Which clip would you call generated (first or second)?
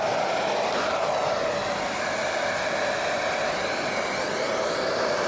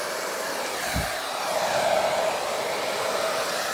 second